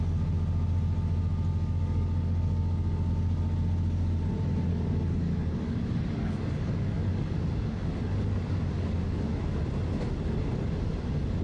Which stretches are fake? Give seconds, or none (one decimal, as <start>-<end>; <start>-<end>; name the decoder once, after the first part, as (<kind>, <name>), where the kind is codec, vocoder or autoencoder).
1.5-3.1 (codec, DAC); 4.7-9.4